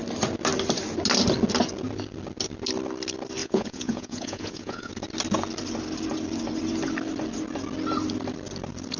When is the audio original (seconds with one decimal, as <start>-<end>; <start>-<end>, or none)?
0.0-3.4; 4.9-9.0